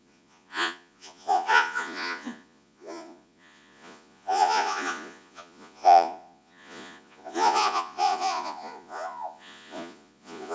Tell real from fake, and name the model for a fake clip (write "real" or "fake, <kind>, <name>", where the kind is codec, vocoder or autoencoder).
fake, vocoder, Vocos